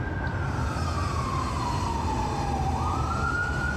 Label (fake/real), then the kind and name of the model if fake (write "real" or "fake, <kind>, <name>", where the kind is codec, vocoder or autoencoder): real